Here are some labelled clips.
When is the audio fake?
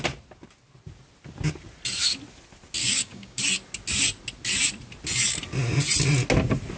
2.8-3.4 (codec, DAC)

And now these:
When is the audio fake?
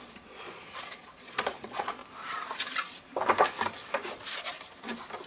0.0-2.0 (vocoder, Vocos)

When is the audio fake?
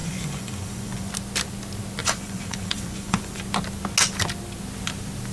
0.0-1.1 (vocoder, Vocos); 2.0-3.4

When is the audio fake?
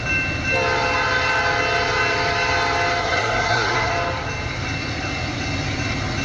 3.0-3.9 (codec, SNAC)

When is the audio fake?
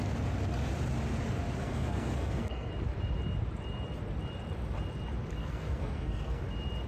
1.6-2.7 (codec, SNAC); 5.4-6.4